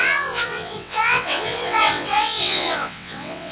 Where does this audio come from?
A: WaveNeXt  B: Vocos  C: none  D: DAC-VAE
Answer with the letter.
A